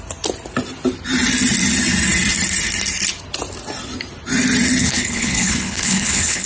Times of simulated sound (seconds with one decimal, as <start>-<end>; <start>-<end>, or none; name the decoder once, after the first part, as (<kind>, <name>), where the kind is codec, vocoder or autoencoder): 4.8-6.5 (codec, HILCodec)